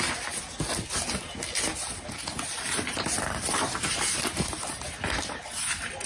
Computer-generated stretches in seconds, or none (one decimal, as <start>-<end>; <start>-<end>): none